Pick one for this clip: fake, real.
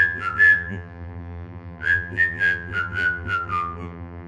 fake